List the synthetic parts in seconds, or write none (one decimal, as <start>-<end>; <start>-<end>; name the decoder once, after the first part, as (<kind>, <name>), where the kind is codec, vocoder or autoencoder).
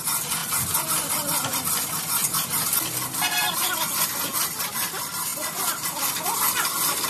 none